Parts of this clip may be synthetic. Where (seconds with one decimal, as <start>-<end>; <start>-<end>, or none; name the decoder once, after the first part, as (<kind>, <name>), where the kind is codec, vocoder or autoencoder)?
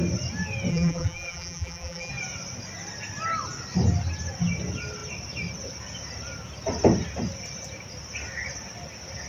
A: 0.7-2.1 (vocoder, BigVGAN v2)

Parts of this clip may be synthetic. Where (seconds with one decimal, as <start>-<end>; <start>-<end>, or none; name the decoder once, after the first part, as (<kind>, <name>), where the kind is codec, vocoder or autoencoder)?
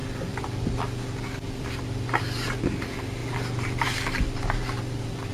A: none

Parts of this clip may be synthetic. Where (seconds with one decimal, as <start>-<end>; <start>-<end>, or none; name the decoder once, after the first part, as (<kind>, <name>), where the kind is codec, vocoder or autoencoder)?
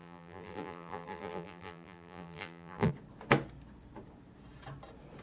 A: 0.0-2.9 (vocoder, BigVGAN v2)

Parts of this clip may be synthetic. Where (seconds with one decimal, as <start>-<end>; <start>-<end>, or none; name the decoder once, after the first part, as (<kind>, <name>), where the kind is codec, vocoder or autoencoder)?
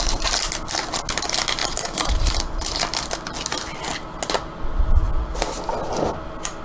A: 1.6-2.4 (vocoder, BigVGAN v2)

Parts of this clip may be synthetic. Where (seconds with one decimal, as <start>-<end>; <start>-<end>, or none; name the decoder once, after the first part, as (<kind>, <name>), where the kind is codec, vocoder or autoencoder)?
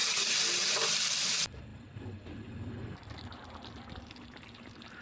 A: 0.0-0.7 (vocoder, BigVGAN v2)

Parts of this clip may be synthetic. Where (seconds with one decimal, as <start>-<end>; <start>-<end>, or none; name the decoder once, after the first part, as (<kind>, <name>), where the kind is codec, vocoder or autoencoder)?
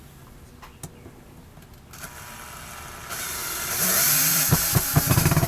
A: 3.4-3.9 (vocoder, BigVGAN v2); 4.3-4.9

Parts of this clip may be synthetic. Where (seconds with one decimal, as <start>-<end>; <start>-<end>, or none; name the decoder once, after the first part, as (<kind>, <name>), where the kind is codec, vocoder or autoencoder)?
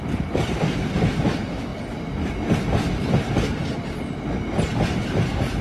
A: 0.0-1.7 (vocoder, BigVGAN v2); 5.1-5.6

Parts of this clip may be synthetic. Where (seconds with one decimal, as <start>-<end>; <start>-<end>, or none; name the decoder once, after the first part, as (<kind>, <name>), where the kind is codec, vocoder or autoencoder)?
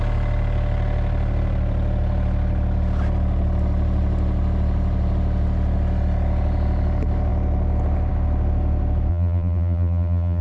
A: 9.1-10.4 (vocoder, BigVGAN v2)